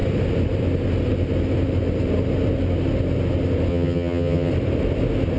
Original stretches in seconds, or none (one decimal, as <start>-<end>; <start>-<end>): 0.0-3.7; 4.5-5.4